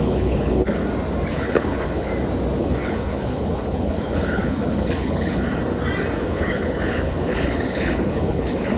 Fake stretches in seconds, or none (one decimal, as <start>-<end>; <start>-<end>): 0.0-0.8; 1.3-2.1; 2.6-5.5; 6.2-8.8